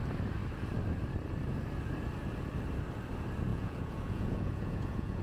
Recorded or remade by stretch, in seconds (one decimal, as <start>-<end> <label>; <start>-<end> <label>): 0.0-3.5 recorded; 3.5-5.2 remade